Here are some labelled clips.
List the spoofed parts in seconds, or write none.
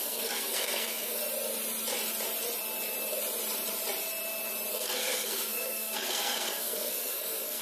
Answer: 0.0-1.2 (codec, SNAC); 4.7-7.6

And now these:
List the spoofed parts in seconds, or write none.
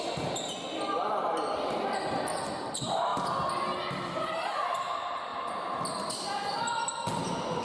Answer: none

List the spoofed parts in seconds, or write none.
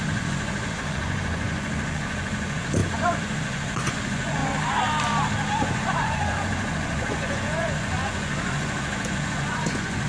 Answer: 0.0-4.4 (vocoder, Vocos); 5.5-10.1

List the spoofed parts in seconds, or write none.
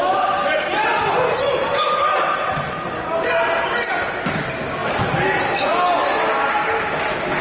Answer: none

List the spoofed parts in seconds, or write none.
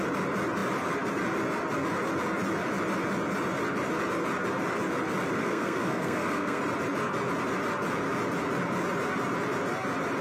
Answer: 5.4-6.6 (codec, SNAC)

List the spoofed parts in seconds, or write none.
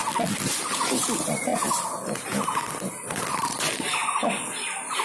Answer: none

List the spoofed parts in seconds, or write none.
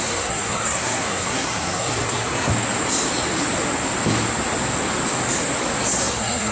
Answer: 0.0-2.5 (codec, SNAC); 6.0-6.5